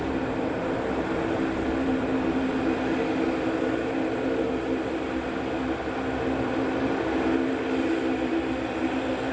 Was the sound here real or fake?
real